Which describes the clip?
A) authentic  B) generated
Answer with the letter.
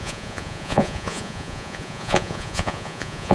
B